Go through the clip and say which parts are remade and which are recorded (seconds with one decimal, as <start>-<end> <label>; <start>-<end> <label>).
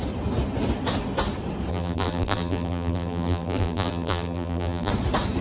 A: 0.0-1.7 recorded; 1.7-4.9 remade; 4.9-5.4 recorded